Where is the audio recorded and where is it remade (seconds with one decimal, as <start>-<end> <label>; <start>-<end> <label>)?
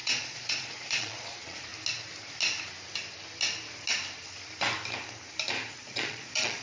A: 0.0-1.7 remade; 1.7-5.7 recorded; 5.7-6.6 remade